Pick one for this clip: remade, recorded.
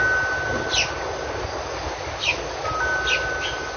recorded